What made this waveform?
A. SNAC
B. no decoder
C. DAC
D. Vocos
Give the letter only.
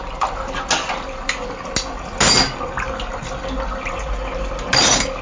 B